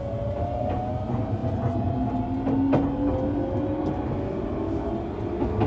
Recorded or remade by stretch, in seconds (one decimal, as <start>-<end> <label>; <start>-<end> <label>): 0.0-5.7 recorded